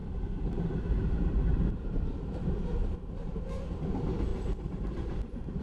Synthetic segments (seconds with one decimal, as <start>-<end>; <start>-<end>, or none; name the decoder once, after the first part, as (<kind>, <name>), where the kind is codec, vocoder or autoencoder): 0.0-3.4 (vocoder, BigVGAN v2); 4.3-5.6